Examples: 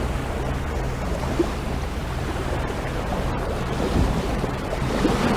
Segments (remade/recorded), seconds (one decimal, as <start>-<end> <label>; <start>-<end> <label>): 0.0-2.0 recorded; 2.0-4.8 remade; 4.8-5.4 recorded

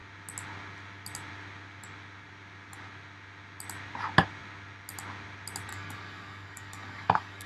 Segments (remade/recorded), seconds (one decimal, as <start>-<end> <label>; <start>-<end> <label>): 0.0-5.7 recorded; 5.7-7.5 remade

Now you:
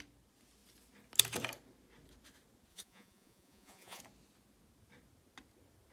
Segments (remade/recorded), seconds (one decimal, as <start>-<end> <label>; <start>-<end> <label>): 0.0-2.7 recorded; 2.7-4.0 remade; 4.0-5.9 recorded

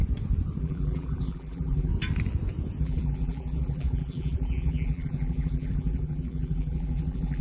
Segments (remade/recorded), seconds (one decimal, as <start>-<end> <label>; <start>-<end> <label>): 0.0-0.6 recorded; 0.6-1.9 remade; 1.9-2.8 recorded; 2.8-7.4 remade